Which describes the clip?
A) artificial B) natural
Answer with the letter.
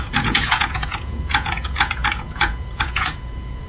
A